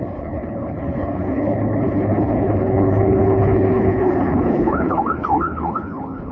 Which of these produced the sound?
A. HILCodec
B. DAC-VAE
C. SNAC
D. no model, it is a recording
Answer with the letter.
A